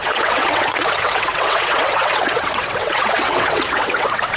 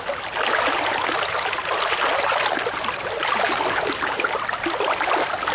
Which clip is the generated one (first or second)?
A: first